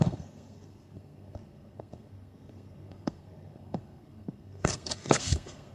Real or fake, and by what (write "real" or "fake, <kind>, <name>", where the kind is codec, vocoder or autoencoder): fake, codec, SNAC